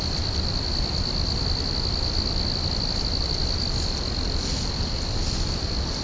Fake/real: fake